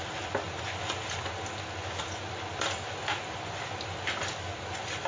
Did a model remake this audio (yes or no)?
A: no